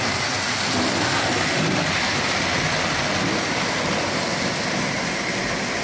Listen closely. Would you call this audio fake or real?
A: real